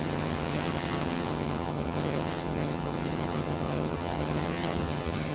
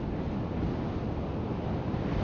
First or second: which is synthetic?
first